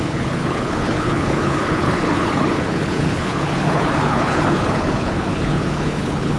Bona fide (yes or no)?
no